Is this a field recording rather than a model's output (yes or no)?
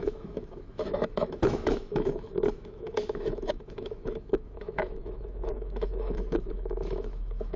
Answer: no